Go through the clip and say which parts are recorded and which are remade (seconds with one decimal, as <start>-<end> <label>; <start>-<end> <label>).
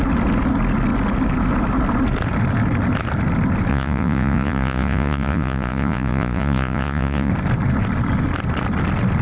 0.0-3.7 recorded; 3.7-7.3 remade; 7.3-9.2 recorded